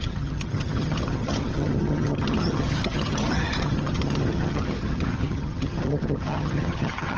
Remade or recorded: remade